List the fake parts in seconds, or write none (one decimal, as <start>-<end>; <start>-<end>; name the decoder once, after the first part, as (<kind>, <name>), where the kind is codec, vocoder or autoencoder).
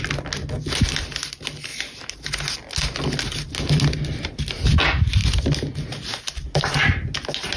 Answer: none